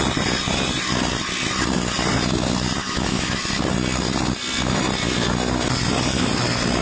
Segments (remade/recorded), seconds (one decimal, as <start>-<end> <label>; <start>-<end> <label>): 0.0-2.8 recorded; 2.8-3.4 remade; 3.4-6.8 recorded